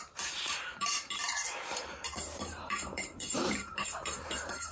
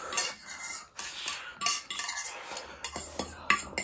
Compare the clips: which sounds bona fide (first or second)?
second